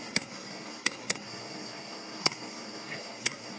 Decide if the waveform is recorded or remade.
remade